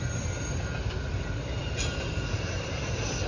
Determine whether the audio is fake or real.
real